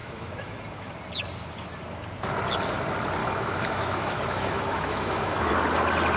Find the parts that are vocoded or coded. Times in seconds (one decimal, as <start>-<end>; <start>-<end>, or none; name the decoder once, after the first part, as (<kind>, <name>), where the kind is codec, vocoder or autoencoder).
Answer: 0.0-0.9 (autoencoder, DAC-VAE); 3.2-5.5